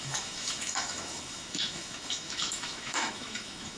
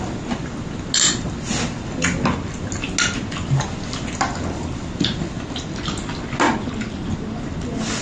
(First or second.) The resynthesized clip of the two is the first